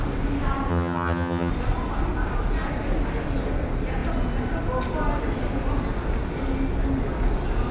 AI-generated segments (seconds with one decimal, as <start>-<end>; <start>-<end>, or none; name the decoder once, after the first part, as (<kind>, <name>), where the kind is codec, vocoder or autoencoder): 0.7-1.5 (vocoder, HiFi-GAN)